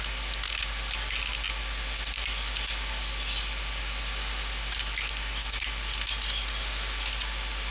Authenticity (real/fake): real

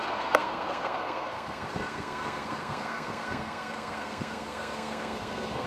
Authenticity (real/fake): fake